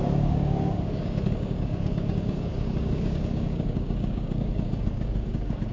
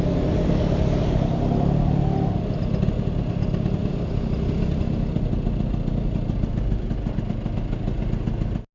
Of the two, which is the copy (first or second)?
first